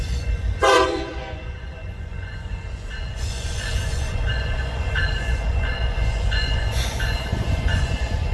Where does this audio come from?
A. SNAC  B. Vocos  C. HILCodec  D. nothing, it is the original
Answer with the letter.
B